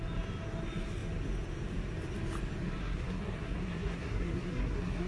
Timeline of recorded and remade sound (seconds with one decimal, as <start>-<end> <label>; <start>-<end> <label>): 0.0-2.8 recorded; 2.8-5.1 remade